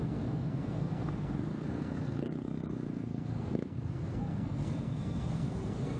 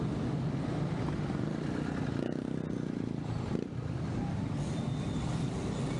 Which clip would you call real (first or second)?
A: second